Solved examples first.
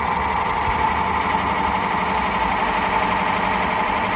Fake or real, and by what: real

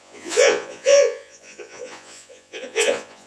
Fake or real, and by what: fake, vocoder, Vocos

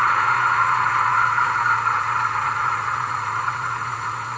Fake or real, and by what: fake, vocoder, Vocos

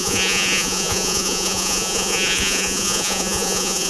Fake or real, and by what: fake, vocoder, Vocos